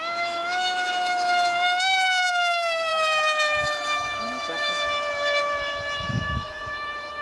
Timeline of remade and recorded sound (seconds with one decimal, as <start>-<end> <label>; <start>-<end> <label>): 0.0-7.2 remade